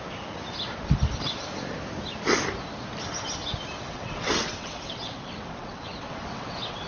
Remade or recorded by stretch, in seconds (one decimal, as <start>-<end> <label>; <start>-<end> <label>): 0.0-3.9 recorded; 3.9-6.9 remade